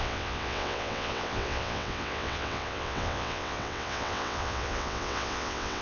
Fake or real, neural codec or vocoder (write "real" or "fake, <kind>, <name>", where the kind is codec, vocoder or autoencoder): fake, vocoder, WaveNeXt